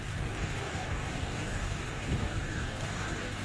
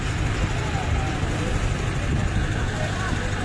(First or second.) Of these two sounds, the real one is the second